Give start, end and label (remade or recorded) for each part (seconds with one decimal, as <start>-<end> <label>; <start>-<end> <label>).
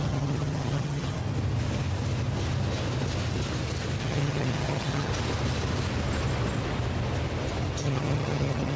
0.0-1.2 remade; 1.2-4.0 recorded; 4.0-5.1 remade; 5.1-7.8 recorded; 7.8-8.8 remade